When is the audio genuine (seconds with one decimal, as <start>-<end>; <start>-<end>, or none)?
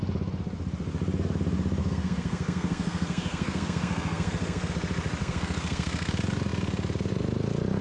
0.0-1.8; 4.7-5.2; 6.1-7.8